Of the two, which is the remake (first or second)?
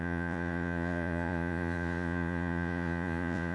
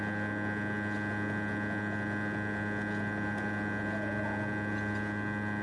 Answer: first